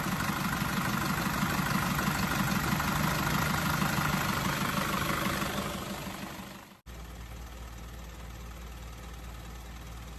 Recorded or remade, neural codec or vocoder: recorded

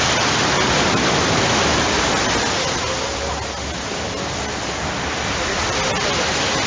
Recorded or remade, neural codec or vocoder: recorded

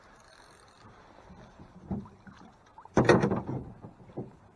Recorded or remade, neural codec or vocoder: recorded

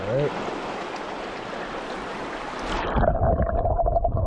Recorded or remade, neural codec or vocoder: recorded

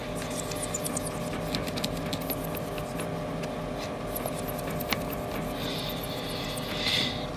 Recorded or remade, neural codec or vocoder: recorded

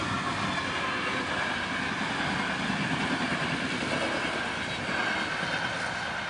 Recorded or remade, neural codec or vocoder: recorded